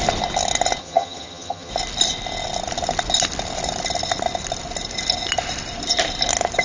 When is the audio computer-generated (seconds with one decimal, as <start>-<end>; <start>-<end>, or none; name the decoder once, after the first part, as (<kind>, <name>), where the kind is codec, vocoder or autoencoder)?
0.8-1.7 (vocoder, HiFi-GAN)